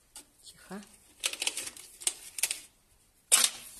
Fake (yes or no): no